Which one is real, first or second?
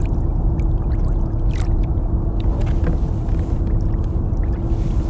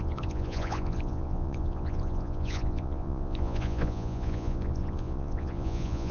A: first